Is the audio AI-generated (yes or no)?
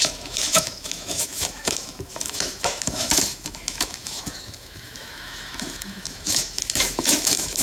yes